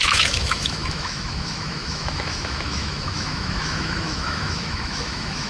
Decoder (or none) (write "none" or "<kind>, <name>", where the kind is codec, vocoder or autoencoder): autoencoder, DAC-VAE